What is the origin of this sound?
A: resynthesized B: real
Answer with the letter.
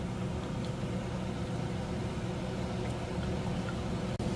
B